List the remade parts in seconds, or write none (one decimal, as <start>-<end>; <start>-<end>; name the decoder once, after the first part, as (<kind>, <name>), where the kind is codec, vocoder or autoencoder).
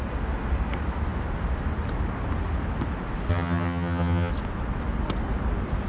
3.3-4.3 (vocoder, HiFi-GAN)